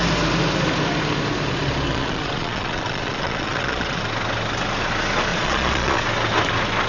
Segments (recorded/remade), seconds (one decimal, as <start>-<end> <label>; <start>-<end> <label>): 0.0-1.9 recorded; 1.9-4.0 remade; 4.0-5.3 recorded; 5.3-6.0 remade; 6.0-6.9 recorded